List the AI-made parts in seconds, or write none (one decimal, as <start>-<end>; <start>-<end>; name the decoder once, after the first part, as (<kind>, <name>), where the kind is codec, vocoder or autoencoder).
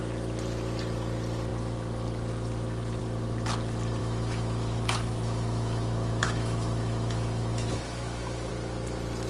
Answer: 4.0-8.5 (autoencoder, DAC-VAE)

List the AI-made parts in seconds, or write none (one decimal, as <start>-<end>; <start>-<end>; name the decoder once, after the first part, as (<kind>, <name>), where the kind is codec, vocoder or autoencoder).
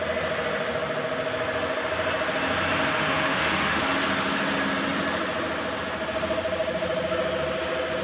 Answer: 2.9-3.8 (autoencoder, DAC-VAE)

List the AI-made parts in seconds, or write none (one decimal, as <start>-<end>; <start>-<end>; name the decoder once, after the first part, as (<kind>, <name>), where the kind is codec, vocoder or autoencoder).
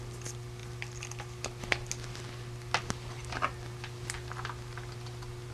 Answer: none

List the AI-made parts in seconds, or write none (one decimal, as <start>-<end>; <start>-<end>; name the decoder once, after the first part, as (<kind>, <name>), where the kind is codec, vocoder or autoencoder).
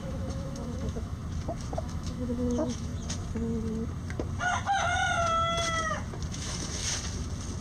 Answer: 0.0-1.2 (autoencoder, DAC-VAE); 1.8-2.9; 6.3-6.8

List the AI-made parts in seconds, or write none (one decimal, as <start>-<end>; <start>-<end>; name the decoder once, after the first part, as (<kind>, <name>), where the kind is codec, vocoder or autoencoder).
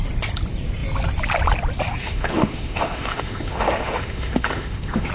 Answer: 2.0-5.1 (autoencoder, DAC-VAE)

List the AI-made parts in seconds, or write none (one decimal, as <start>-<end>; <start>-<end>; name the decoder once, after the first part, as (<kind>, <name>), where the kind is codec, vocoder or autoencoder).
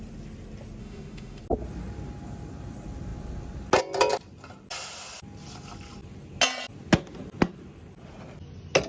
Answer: 0.8-1.4 (autoencoder, DAC-VAE)